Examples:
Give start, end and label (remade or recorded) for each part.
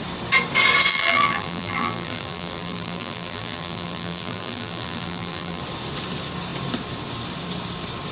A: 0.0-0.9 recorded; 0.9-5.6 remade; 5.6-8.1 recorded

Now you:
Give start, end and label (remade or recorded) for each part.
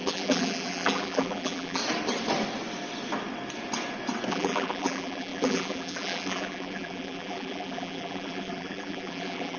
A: 0.0-1.8 remade; 1.8-4.3 recorded; 4.3-9.6 remade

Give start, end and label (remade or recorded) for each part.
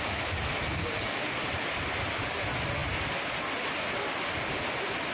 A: 0.0-0.8 recorded; 0.8-1.8 remade; 1.8-5.1 recorded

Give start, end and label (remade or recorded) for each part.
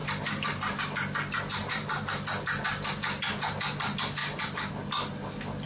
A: 0.0-1.6 recorded; 1.6-2.6 remade; 2.6-4.2 recorded; 4.2-4.7 remade; 4.7-5.7 recorded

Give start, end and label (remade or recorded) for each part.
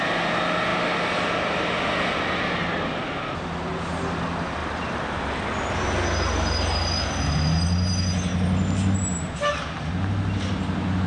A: 0.0-11.1 recorded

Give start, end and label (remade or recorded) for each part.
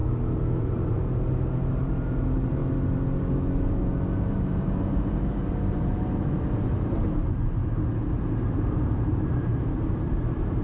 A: 0.0-0.6 recorded; 0.6-2.6 remade; 2.6-4.2 recorded; 4.2-7.6 remade; 7.6-8.4 recorded; 8.4-10.6 remade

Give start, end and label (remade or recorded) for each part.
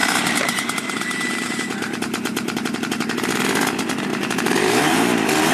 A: 0.0-3.3 remade; 3.3-4.1 recorded; 4.1-4.8 remade; 4.8-5.5 recorded